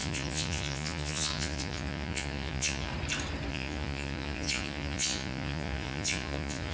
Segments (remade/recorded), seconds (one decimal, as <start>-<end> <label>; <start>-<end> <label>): 0.0-2.9 remade; 2.9-3.5 recorded; 3.5-6.7 remade